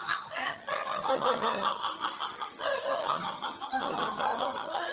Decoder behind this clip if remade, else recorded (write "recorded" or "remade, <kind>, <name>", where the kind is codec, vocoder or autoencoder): remade, vocoder, HiFi-GAN